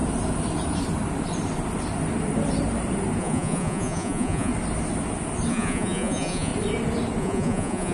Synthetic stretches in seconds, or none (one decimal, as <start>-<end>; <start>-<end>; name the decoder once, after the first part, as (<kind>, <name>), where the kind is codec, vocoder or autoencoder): 3.2-4.5 (vocoder, Vocos); 5.5-6.5; 7.2-7.9